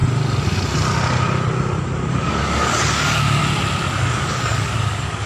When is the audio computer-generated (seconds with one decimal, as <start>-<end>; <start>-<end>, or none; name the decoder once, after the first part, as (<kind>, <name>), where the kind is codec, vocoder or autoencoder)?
2.1-3.4 (codec, DAC); 4.0-5.3